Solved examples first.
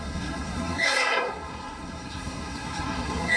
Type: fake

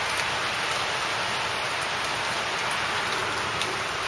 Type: real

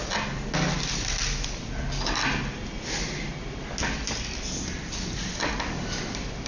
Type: real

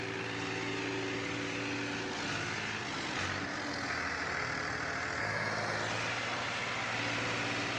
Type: real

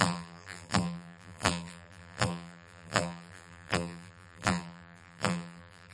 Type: fake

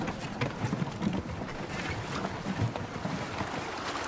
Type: real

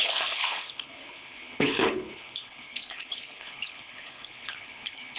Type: fake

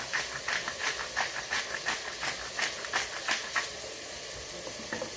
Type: real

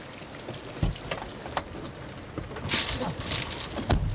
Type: real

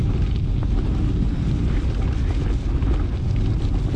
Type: real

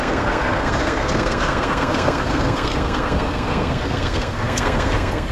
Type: fake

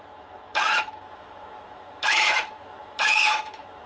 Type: fake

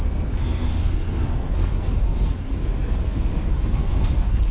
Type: fake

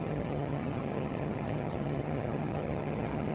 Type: fake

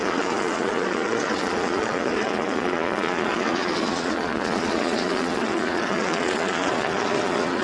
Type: fake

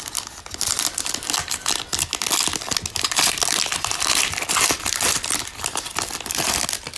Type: real